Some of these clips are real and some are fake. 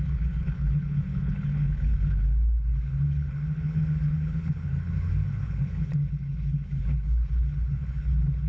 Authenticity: fake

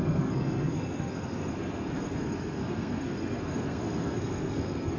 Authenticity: fake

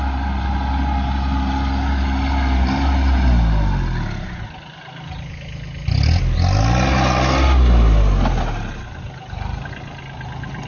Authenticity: real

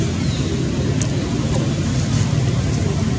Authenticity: real